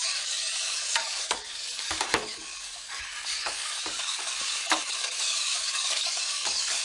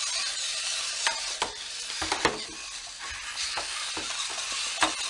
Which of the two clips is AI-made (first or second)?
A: first